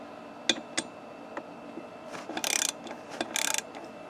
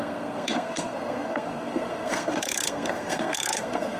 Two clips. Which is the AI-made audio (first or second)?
second